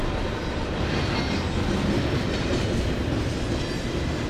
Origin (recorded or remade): recorded